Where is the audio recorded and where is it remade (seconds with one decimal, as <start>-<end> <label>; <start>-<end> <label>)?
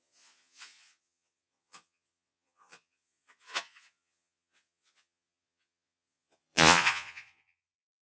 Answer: 0.0-8.0 remade